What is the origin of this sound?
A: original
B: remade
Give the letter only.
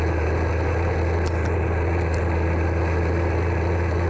A